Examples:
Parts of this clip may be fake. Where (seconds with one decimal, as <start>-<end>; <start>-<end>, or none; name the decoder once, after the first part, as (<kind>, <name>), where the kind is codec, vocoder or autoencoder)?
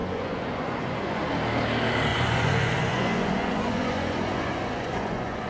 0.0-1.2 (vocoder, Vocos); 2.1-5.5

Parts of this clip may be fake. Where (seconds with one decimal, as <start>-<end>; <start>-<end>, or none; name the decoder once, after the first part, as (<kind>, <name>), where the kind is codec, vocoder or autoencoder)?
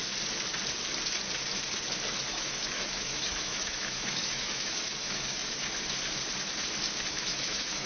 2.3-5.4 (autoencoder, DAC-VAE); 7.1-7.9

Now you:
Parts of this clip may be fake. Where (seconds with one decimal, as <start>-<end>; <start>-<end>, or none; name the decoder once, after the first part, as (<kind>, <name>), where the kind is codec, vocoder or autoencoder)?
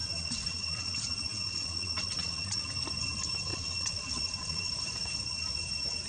0.0-2.7 (vocoder, Vocos); 3.5-4.7